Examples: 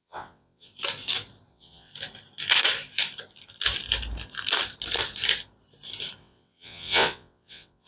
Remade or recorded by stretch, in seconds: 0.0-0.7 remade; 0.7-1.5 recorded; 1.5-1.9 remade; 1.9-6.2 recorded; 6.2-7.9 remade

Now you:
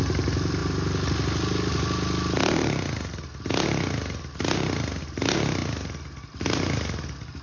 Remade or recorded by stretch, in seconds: 0.0-7.4 recorded